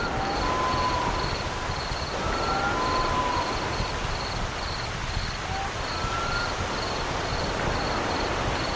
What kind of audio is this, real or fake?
real